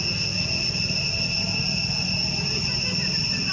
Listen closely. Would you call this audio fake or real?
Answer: real